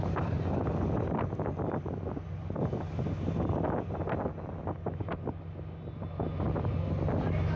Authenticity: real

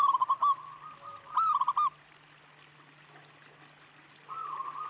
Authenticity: real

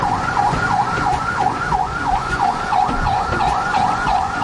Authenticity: fake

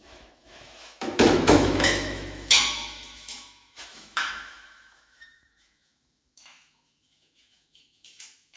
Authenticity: fake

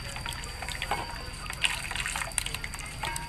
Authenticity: real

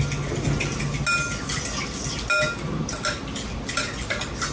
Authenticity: real